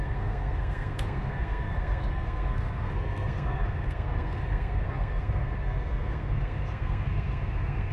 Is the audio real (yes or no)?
no